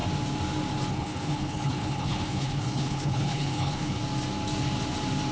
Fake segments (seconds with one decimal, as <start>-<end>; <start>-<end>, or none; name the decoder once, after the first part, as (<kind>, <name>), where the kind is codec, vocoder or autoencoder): 0.9-4.0 (codec, HILCodec)